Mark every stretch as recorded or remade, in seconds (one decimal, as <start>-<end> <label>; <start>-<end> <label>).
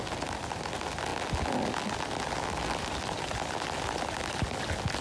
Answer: 0.0-5.0 recorded